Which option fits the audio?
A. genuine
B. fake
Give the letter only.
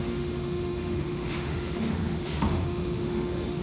B